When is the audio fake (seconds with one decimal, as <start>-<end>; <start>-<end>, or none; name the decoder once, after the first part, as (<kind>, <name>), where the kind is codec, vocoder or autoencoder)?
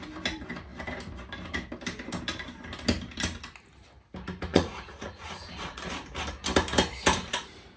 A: 4.5-5.9 (vocoder, Vocos)